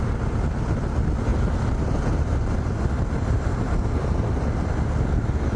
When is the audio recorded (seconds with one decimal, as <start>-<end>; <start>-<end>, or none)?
0.0-1.3; 4.7-5.6